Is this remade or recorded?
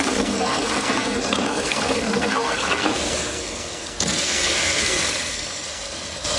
remade